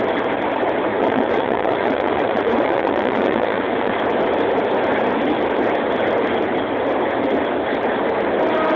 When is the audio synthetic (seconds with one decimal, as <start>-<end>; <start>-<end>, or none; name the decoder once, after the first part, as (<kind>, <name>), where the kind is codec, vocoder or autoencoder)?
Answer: 0.9-3.9 (vocoder, Vocos)